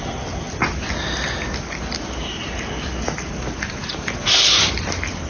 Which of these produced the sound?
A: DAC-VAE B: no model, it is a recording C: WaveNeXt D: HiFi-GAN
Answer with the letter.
B